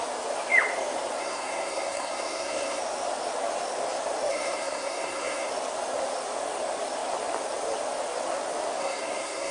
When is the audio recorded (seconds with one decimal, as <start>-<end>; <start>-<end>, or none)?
0.0-1.2; 2.8-4.3; 5.5-8.8